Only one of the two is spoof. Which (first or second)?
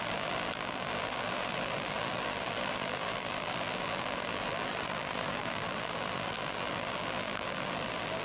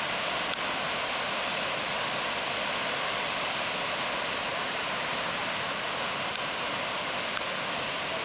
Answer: first